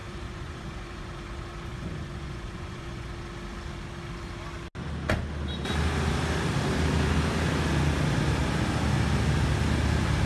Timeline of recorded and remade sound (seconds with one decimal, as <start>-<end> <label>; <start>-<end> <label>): 0.0-1.1 remade; 1.1-1.7 recorded; 1.7-3.1 remade; 3.1-10.3 recorded